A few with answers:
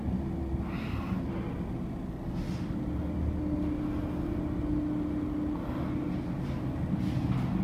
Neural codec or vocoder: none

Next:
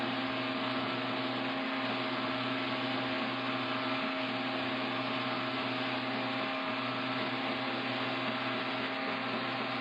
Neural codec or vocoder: none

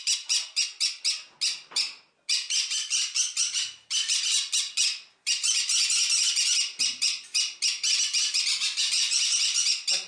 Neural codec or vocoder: none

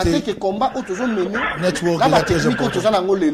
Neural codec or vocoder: none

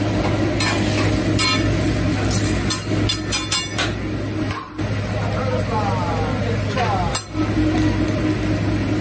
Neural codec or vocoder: none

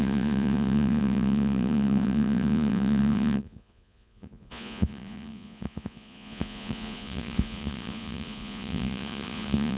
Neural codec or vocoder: vocoder, Vocos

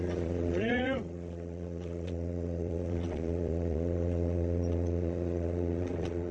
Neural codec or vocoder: vocoder, Vocos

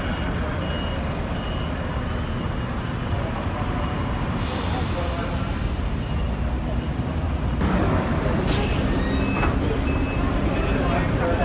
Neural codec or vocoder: none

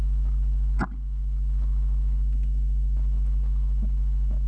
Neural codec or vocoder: none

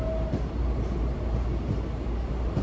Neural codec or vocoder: none